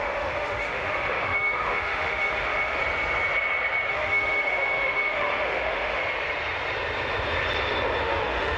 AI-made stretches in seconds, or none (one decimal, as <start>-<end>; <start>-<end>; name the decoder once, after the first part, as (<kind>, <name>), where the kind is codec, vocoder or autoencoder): 0.0-2.8 (autoencoder, DAC-VAE); 3.9-6.0; 8.0-8.6